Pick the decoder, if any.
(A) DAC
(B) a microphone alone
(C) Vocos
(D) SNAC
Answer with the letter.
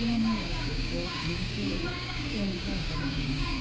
A